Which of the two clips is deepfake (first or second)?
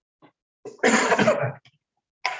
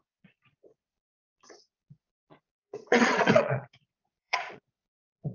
second